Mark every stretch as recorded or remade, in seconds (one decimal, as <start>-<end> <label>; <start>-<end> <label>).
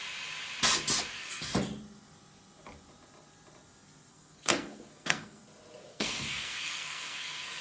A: 0.0-1.0 recorded; 1.0-1.5 remade; 1.5-4.1 recorded; 4.1-5.4 remade; 5.4-5.9 recorded; 5.9-7.6 remade